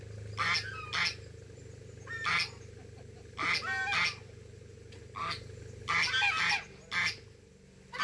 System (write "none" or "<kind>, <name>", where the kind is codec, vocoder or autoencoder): none